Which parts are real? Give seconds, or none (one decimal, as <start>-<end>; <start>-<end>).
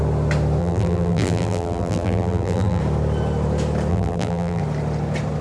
0.0-0.6; 2.8-3.9; 4.6-5.4